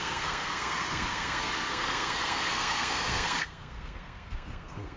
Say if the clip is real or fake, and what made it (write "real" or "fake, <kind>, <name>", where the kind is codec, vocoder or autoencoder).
fake, codec, SNAC